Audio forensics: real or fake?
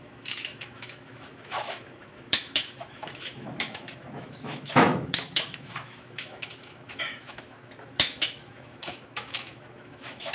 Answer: fake